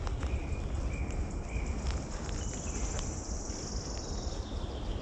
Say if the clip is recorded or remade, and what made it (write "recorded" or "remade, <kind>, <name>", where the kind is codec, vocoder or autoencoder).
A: recorded